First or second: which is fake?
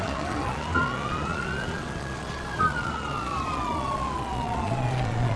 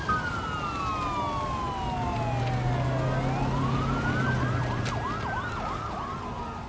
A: first